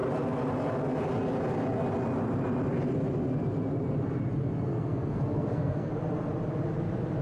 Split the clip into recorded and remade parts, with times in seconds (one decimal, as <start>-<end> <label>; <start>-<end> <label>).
0.0-4.7 recorded; 4.7-5.9 remade; 5.9-7.2 recorded